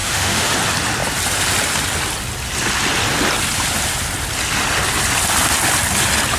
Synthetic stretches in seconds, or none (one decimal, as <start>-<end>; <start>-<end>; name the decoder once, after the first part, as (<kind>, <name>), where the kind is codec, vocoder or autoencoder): 0.0-0.5 (autoencoder, DAC-VAE)